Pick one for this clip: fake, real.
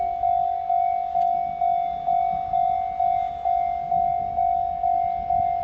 real